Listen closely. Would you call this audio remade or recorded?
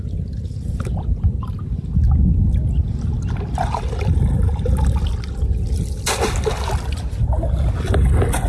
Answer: recorded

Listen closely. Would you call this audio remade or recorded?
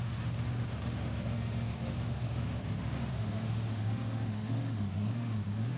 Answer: remade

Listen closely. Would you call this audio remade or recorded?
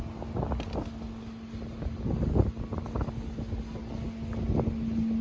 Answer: recorded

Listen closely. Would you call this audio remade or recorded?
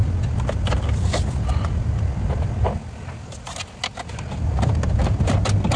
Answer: recorded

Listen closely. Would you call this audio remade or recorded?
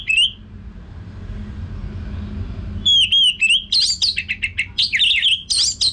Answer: recorded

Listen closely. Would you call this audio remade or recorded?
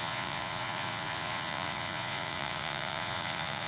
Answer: remade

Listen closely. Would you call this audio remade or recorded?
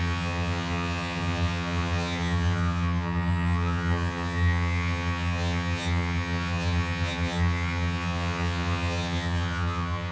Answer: remade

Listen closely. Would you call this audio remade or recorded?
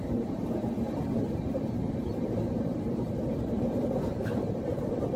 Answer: remade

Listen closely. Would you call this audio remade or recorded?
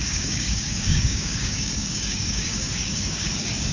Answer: remade